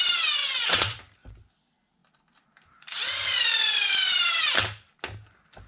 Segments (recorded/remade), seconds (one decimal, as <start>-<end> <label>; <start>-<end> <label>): 0.0-0.4 recorded; 0.4-1.0 remade; 1.0-5.7 recorded